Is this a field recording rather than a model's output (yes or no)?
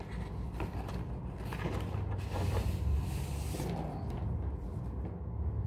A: yes